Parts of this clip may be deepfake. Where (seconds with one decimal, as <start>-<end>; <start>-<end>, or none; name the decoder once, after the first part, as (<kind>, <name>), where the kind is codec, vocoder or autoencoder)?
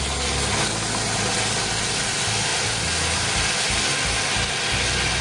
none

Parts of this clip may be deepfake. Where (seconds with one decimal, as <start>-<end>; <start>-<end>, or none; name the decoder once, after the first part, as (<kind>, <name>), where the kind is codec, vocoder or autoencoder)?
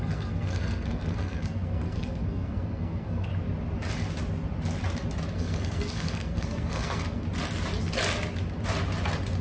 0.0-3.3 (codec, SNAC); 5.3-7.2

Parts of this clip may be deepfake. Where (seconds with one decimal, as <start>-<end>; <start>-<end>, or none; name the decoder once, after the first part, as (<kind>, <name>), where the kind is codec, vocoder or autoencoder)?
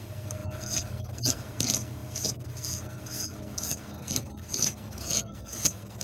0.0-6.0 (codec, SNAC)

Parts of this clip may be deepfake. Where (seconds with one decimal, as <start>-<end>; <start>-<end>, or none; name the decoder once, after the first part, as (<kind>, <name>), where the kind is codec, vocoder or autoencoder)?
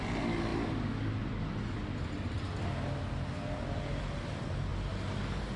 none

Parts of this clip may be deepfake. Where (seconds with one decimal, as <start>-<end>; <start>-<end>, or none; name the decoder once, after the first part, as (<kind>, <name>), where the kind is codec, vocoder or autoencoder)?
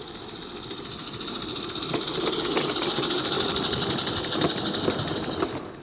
none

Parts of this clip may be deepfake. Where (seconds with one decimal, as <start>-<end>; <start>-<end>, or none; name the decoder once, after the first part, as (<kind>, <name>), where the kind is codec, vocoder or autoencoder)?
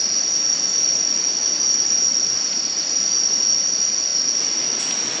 none